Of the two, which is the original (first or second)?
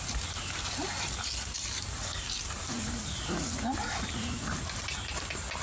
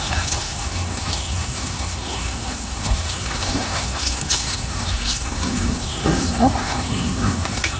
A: first